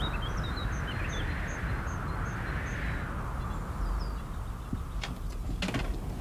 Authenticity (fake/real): real